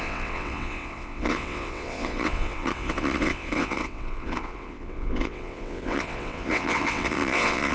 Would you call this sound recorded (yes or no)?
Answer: no